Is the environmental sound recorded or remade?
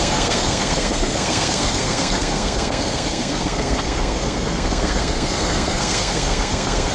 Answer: remade